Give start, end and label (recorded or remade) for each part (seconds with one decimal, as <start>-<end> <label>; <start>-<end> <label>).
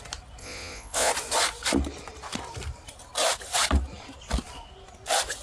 0.0-0.4 recorded; 0.4-1.1 remade; 1.1-5.4 recorded